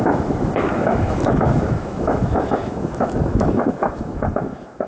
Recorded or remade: remade